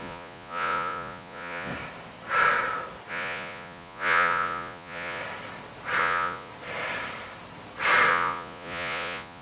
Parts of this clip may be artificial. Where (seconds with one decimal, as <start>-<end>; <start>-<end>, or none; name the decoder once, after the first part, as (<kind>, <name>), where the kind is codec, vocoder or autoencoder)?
0.0-1.7 (vocoder, Vocos); 3.1-5.2; 6.0-6.5; 8.1-9.4

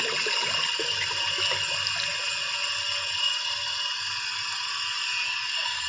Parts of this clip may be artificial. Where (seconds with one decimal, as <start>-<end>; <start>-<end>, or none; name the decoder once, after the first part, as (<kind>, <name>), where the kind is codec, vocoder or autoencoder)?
5.2-5.9 (codec, DAC)

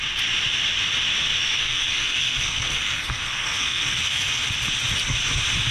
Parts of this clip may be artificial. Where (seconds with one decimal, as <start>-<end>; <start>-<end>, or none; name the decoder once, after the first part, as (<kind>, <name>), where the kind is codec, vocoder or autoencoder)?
1.4-4.5 (codec, SNAC)

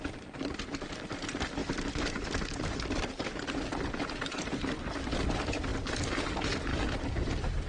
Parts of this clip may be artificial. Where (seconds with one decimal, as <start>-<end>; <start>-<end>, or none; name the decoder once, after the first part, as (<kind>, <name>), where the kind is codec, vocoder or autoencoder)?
1.6-3.3 (vocoder, BigVGAN v2); 3.7-4.8; 6.7-7.3